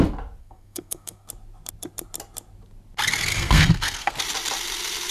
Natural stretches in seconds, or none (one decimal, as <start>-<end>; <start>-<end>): 0.0-0.4; 1.3-3.3; 4.1-5.1